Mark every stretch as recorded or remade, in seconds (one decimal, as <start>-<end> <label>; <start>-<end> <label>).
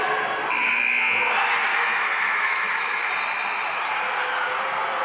0.0-1.7 recorded; 1.7-3.1 remade; 3.1-5.0 recorded